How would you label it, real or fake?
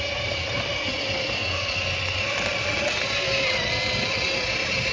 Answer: real